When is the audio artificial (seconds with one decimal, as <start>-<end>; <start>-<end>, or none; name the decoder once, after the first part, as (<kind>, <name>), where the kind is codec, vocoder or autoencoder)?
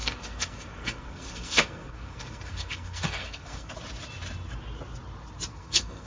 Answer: 0.0-3.7 (codec, SNAC); 5.5-6.1